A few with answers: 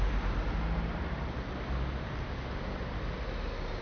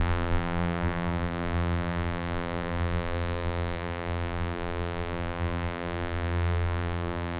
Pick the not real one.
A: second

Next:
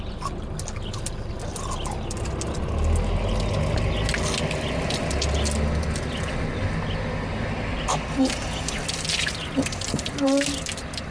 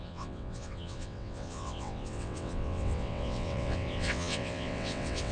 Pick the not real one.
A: second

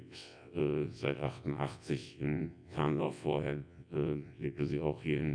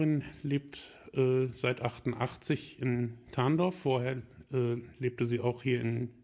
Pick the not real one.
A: first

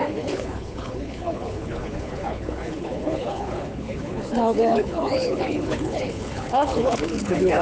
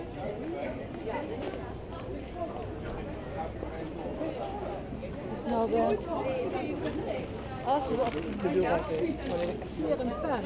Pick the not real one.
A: first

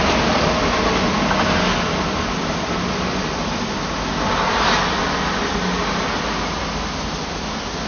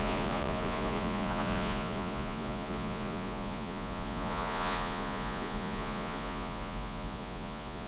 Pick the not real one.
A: second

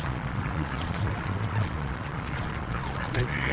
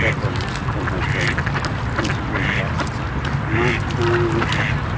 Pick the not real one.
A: first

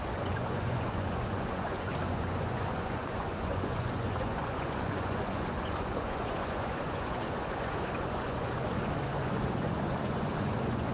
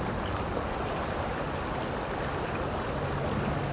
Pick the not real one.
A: first